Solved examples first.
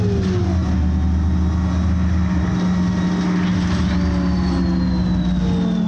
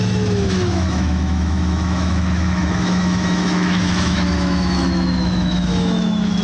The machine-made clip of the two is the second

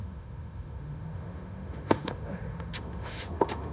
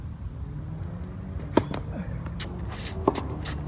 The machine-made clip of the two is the first